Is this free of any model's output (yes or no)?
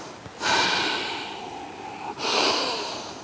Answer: yes